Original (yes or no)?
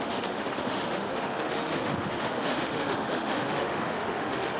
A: no